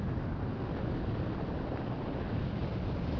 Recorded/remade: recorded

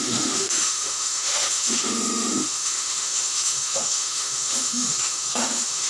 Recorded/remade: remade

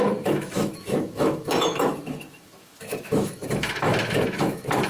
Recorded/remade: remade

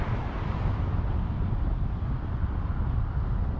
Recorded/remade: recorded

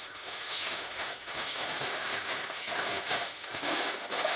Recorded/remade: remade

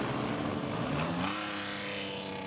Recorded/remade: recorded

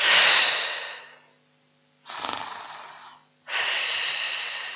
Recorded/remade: recorded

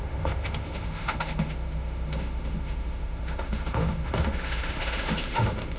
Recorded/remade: remade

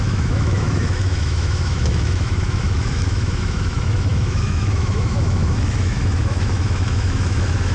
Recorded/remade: remade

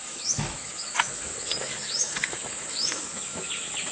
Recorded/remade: remade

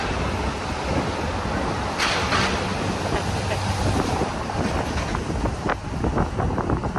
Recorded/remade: recorded